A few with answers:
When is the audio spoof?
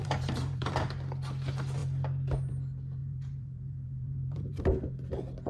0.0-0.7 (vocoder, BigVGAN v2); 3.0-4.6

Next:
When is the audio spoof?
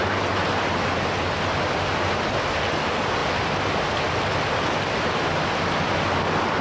none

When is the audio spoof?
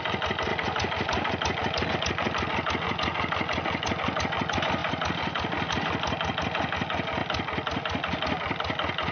0.5-1.9 (vocoder, BigVGAN v2); 4.8-5.7; 7.2-9.1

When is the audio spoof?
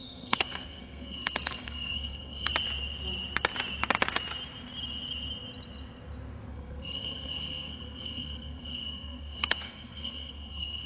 0.0-2.5 (codec, SNAC); 6.5-10.9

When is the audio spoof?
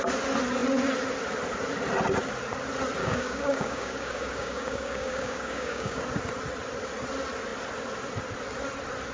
3.0-6.0 (codec, DAC)